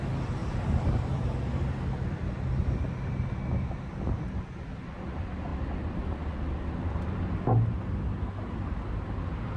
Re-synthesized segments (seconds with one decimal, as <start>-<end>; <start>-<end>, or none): 0.4-1.5